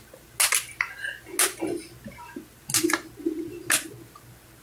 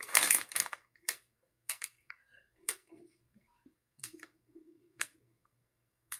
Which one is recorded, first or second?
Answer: first